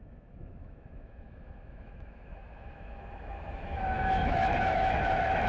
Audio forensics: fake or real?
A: fake